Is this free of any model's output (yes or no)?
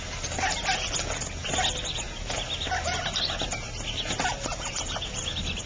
yes